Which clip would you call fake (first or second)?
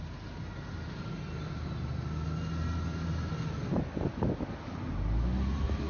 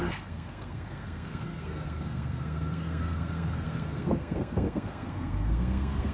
second